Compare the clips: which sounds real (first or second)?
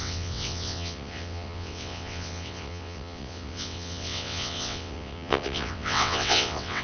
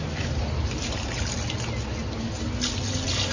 second